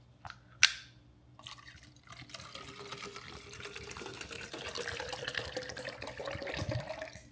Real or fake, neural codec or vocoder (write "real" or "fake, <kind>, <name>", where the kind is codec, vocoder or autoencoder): real